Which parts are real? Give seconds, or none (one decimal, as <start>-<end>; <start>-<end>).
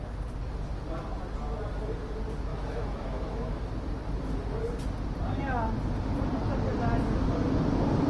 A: 0.0-2.5; 3.6-8.1